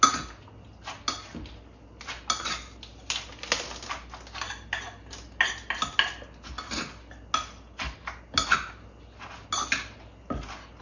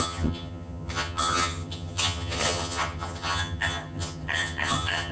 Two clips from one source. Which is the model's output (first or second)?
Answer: second